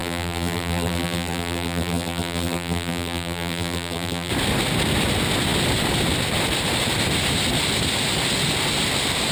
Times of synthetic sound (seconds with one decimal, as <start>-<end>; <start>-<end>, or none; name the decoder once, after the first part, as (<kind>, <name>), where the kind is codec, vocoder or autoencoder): 0.0-4.3 (vocoder, BigVGAN v2)